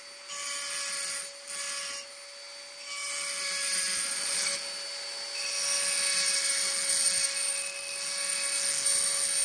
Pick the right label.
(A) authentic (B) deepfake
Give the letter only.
A